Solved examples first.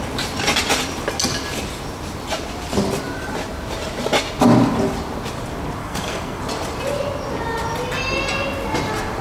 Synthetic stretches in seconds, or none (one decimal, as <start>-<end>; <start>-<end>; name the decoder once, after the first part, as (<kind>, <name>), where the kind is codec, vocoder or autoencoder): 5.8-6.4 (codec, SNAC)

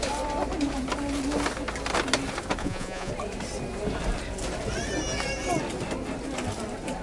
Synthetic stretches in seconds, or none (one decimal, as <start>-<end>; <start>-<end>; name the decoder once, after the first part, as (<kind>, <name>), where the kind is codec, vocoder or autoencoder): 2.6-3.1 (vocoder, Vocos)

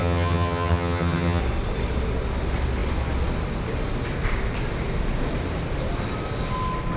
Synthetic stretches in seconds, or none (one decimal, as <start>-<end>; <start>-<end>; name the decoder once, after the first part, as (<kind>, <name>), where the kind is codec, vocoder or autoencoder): 0.0-1.4 (vocoder, HiFi-GAN)

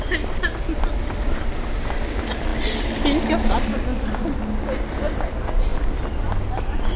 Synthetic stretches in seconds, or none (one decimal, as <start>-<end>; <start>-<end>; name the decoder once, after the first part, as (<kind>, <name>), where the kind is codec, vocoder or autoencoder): none

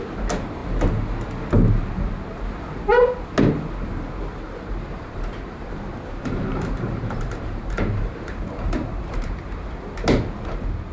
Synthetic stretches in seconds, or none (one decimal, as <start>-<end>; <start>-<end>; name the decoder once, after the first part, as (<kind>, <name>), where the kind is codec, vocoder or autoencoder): 4.9-9.4 (vocoder, BigVGAN v2)

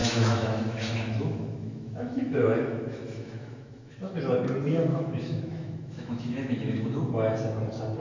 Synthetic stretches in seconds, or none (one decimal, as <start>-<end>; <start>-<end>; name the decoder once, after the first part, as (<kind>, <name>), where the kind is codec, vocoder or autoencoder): 0.0-4.2 (autoencoder, DAC-VAE); 4.9-7.1

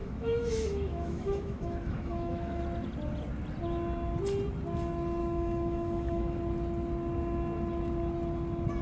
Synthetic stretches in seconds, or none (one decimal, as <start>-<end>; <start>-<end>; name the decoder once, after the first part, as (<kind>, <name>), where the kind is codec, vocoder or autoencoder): 0.0-2.6 (autoencoder, DAC-VAE); 5.2-6.4

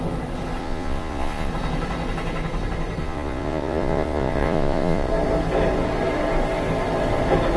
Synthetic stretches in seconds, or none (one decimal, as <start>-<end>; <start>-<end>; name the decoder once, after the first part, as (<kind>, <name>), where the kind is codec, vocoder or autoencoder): 0.6-1.5 (vocoder, Vocos); 3.0-5.1